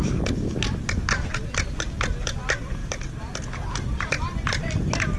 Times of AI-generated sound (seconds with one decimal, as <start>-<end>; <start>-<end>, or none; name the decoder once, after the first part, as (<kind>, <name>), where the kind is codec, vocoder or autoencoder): 2.8-4.1 (vocoder, BigVGAN v2)